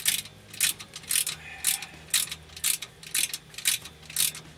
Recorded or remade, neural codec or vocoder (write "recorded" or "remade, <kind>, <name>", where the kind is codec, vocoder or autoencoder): recorded